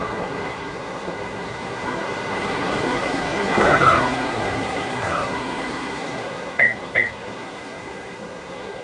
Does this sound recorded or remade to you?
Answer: remade